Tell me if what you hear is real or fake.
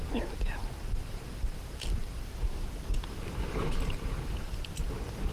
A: fake